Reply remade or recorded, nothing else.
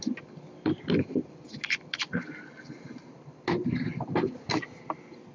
recorded